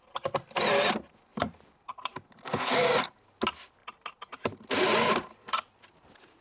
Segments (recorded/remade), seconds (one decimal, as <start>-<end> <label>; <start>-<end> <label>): 0.0-1.3 recorded; 1.3-1.9 remade; 1.9-6.4 recorded